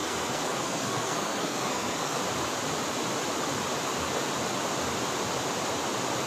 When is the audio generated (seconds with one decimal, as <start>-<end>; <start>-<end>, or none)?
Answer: 0.0-2.2